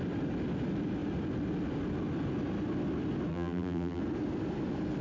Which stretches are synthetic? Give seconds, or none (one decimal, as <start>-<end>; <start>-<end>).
3.3-4.0